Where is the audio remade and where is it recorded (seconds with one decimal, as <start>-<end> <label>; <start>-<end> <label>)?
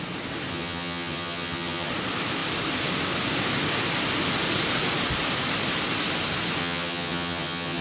0.0-0.5 recorded; 0.5-1.9 remade; 1.9-6.6 recorded; 6.6-7.8 remade